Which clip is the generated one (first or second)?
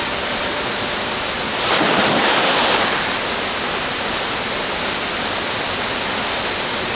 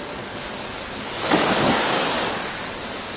second